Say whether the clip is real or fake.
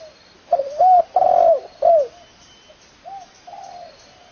real